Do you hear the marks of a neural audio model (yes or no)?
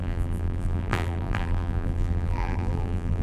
yes